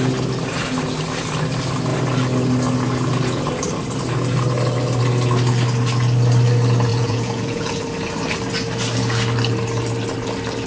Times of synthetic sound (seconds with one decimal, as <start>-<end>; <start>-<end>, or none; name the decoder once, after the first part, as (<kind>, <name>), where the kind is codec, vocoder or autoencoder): 6.9-7.8 (vocoder, Vocos)